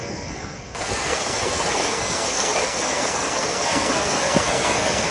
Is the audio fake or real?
fake